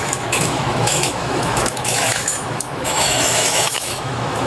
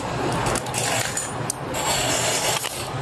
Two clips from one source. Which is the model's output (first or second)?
first